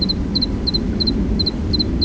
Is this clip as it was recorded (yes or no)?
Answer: yes